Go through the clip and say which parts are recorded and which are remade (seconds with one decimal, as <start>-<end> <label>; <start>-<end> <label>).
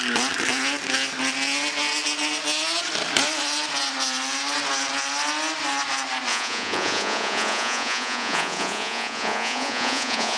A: 0.0-6.3 recorded; 6.3-10.4 remade